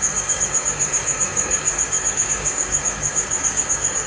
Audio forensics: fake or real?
fake